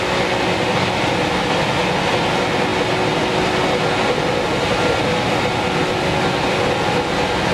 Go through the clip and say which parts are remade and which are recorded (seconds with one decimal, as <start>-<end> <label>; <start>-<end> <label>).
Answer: 0.0-7.5 recorded